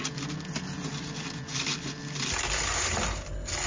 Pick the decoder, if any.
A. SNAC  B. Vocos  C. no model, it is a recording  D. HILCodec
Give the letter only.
C